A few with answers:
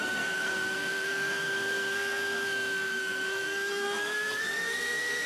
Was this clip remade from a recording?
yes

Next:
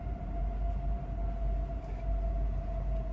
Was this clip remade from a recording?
no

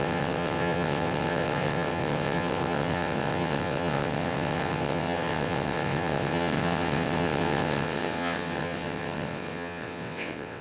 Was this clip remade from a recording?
yes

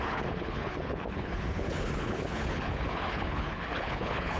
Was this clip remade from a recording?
yes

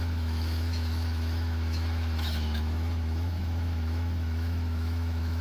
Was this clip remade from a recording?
yes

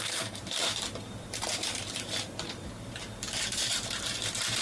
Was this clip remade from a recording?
yes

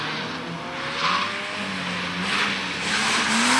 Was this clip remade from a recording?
no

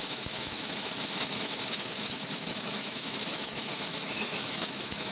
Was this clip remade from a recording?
yes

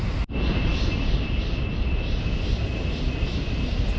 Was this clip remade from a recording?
no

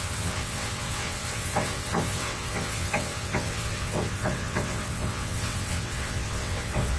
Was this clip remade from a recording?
yes